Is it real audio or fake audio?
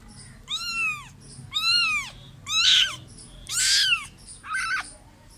real